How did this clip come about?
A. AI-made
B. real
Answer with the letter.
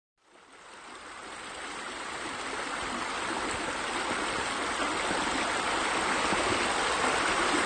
B